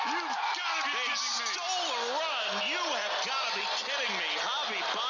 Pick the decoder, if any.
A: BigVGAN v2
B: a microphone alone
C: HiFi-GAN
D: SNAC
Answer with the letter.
B